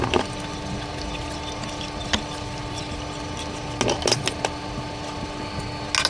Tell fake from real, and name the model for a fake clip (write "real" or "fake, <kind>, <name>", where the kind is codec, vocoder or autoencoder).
real